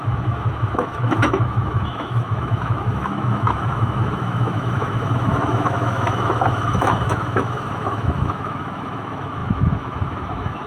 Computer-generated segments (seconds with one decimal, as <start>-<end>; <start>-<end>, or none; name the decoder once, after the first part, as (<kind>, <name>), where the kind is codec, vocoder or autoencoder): 0.0-10.7 (autoencoder, DAC-VAE)